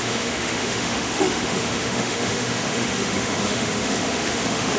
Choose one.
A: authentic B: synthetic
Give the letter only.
B